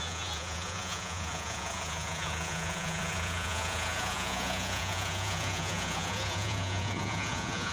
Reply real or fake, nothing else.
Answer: fake